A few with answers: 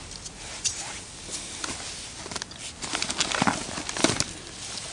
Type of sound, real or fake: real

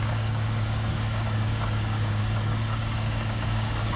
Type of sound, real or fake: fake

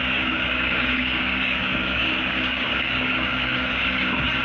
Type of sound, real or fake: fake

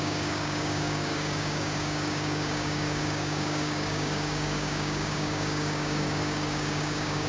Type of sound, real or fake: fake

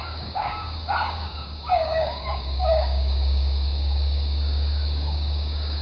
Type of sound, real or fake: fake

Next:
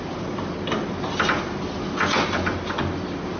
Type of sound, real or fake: real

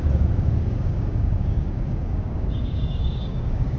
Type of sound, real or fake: fake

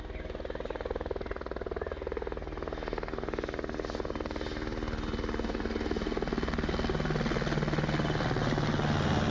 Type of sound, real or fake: real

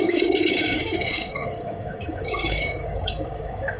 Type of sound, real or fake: fake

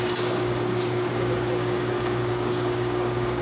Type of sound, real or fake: fake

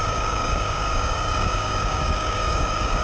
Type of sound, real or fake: fake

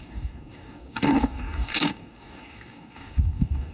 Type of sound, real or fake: fake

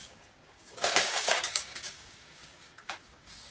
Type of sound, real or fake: fake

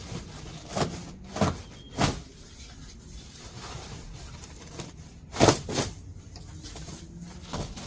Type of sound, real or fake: real